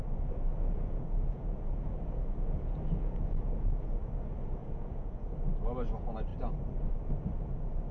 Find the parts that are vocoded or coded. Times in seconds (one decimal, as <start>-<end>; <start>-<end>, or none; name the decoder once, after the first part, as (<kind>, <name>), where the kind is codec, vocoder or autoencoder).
0.5-4.1 (vocoder, Vocos); 4.6-5.3

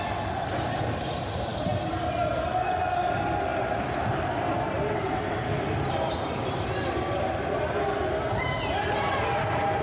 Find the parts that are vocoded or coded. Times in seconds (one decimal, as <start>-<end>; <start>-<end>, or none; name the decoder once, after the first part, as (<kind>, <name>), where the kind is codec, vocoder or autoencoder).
none

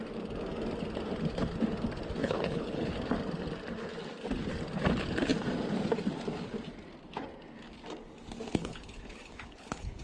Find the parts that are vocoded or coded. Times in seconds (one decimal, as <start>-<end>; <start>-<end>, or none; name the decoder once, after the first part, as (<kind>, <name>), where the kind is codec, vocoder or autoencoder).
2.2-2.9 (codec, HILCodec); 8.5-10.0

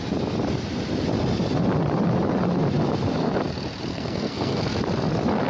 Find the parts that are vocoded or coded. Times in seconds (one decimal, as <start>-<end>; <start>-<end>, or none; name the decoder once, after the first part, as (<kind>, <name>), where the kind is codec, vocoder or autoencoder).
3.9-4.6 (codec, SNAC)

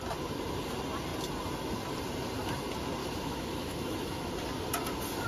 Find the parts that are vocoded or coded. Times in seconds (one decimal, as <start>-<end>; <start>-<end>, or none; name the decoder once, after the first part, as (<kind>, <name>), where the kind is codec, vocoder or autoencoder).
3.0-4.3 (autoencoder, DAC-VAE)